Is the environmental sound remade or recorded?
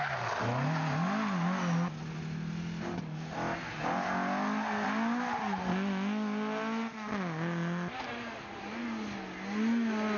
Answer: recorded